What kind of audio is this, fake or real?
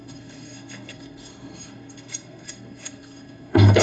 fake